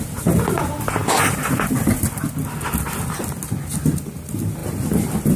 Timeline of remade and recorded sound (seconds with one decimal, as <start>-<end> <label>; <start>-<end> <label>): 0.0-4.6 recorded; 4.6-5.4 remade